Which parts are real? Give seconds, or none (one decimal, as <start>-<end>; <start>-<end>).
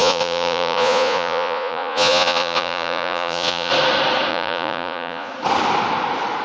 3.7-4.3; 5.3-6.4